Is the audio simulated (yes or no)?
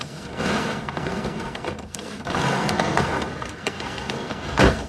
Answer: yes